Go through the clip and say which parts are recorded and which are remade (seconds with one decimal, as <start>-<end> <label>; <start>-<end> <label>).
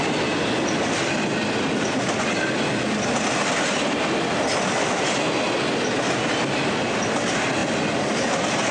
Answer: 0.0-8.7 recorded